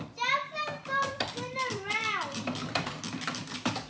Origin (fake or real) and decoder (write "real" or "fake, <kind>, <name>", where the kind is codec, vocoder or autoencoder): fake, vocoder, BigVGAN v2